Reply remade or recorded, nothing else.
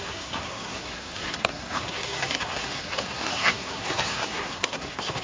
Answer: remade